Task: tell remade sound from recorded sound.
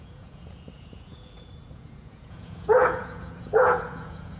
remade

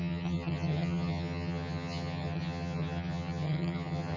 remade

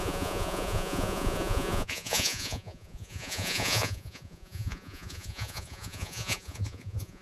remade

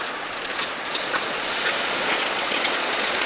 remade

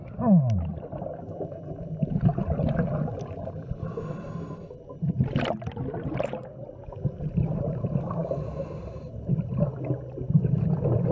recorded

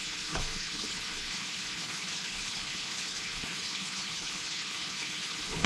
remade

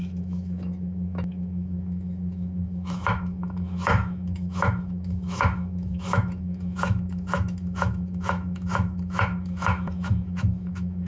remade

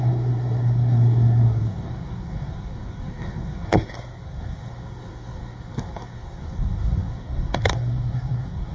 remade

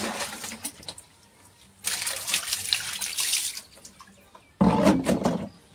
recorded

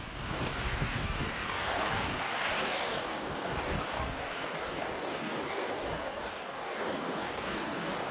remade